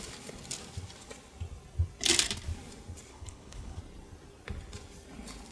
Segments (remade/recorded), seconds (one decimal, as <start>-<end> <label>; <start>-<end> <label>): 0.0-3.1 recorded; 3.1-3.8 remade; 3.8-5.5 recorded